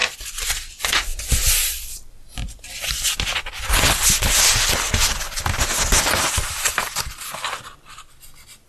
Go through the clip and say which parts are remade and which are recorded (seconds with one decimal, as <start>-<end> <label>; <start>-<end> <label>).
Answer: 0.0-8.7 recorded